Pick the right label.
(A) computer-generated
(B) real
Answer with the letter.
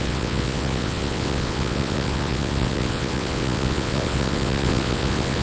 A